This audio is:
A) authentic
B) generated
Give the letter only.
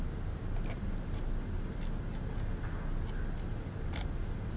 A